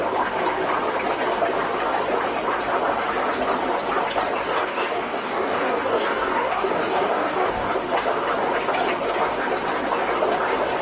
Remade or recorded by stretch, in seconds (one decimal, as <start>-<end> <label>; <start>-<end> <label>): 0.0-4.6 recorded; 4.6-7.7 remade; 7.7-10.8 recorded